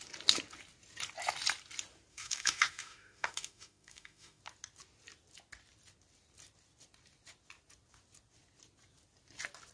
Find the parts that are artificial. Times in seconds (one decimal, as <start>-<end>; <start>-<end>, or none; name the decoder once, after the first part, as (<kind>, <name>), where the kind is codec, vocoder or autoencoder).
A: 2.1-4.4 (autoencoder, DAC-VAE)